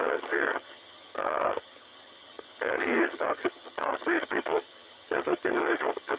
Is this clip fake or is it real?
fake